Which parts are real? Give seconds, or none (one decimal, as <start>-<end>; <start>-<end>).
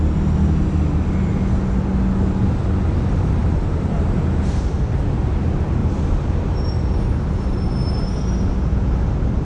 0.0-3.4; 4.2-5.8; 6.9-9.4